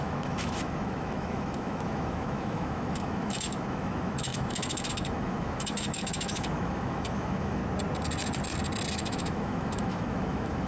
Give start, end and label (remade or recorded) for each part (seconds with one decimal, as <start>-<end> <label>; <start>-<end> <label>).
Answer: 0.0-7.6 remade; 7.6-8.9 recorded; 8.9-10.7 remade